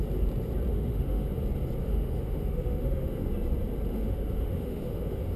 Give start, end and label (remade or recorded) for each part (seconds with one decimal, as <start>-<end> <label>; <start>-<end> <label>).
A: 0.0-0.7 recorded; 0.7-1.3 remade; 1.3-1.8 recorded; 1.8-3.3 remade; 3.3-3.9 recorded; 3.9-5.4 remade